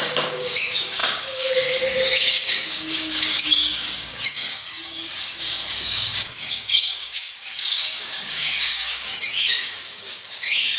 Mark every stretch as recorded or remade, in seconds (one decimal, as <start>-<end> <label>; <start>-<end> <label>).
0.0-10.8 remade